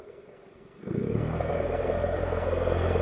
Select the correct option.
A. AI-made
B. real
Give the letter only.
A